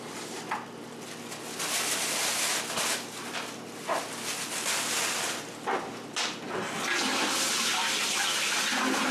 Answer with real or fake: real